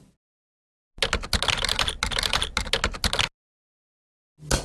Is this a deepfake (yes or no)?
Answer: no